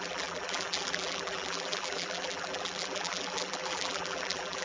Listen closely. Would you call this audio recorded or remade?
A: remade